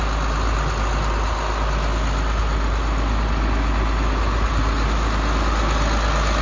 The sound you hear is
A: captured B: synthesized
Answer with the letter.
A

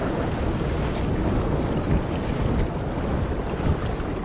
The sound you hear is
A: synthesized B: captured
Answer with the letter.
B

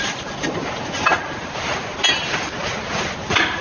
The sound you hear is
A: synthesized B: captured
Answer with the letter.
B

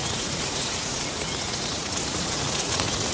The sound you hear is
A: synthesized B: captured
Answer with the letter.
A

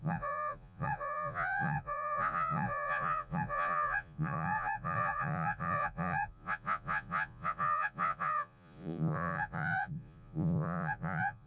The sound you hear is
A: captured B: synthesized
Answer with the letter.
B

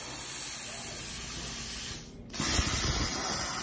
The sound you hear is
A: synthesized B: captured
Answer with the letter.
B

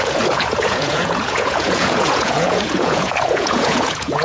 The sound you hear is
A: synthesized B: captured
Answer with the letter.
A